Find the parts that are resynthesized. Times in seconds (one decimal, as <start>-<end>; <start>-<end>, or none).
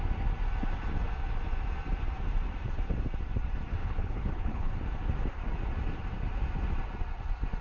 3.8-4.7